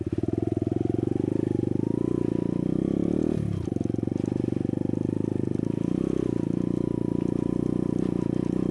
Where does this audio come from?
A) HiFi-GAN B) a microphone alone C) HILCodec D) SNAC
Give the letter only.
B